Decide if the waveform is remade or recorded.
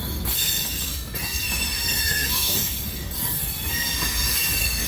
remade